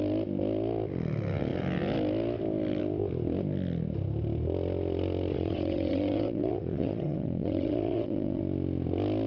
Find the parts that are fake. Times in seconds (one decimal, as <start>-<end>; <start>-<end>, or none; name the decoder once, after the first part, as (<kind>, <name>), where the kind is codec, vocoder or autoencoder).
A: 5.3-8.4 (vocoder, WaveNeXt)